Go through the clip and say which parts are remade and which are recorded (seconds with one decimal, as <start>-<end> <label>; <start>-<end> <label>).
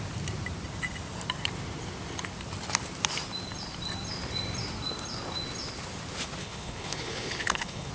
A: 0.0-6.4 recorded; 6.4-7.9 remade